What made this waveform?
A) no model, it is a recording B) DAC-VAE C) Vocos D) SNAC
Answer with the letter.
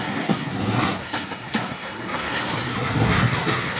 D